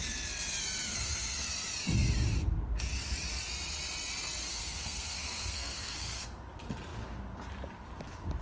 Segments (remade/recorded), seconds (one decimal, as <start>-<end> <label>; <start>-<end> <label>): 0.0-0.9 recorded; 0.9-1.5 remade; 1.5-4.5 recorded; 4.5-6.2 remade; 6.2-8.4 recorded